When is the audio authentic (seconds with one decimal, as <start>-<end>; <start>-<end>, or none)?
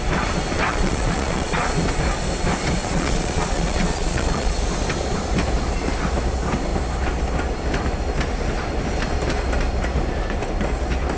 0.0-0.7; 1.8-2.8; 4.6-11.2